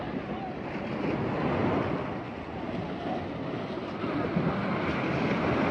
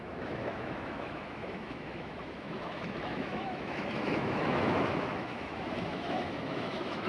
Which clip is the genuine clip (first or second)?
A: first